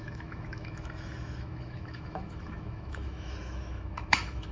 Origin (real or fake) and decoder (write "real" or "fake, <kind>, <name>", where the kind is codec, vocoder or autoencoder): fake, autoencoder, DAC-VAE